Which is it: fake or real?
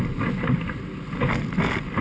real